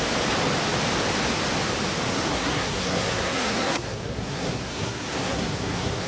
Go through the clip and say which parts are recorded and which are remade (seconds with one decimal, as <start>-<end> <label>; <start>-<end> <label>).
0.0-2.1 recorded; 2.1-6.1 remade